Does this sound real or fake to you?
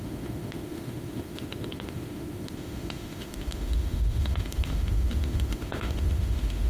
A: fake